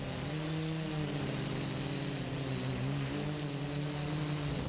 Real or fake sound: real